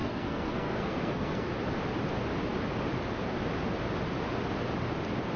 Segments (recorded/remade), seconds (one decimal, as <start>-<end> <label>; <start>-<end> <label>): 0.0-1.5 remade; 1.5-5.4 recorded